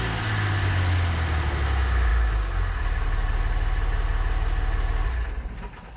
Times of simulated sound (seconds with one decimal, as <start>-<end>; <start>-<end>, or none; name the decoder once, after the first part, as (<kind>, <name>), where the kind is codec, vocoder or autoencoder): none